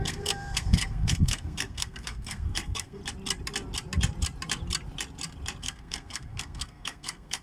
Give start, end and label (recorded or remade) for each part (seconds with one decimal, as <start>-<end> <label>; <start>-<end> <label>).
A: 0.0-3.0 remade; 3.0-5.6 recorded; 5.6-7.4 remade